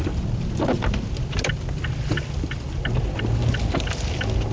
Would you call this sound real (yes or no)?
yes